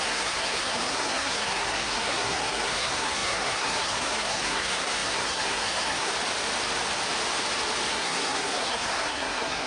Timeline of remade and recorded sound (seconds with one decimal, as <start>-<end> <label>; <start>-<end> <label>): 0.0-6.1 remade; 6.1-7.9 recorded; 7.9-9.7 remade